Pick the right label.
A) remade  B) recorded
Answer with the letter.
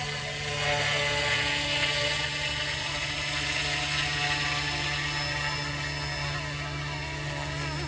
B